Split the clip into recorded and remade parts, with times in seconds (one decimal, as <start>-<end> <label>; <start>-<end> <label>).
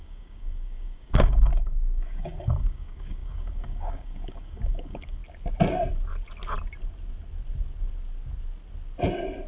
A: 0.0-5.2 remade; 5.2-9.5 recorded